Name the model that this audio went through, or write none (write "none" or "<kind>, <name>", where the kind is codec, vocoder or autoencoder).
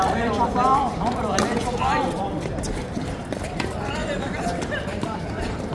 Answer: vocoder, BigVGAN v2